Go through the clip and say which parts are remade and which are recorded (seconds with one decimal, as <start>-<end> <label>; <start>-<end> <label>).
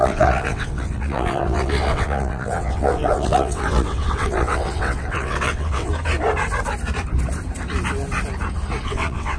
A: 0.0-5.9 remade; 5.9-8.8 recorded; 8.8-9.4 remade